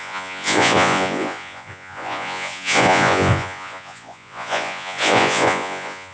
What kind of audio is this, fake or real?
fake